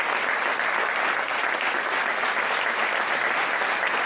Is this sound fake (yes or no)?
no